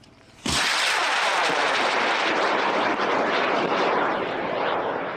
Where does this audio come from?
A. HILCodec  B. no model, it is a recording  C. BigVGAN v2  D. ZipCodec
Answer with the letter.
C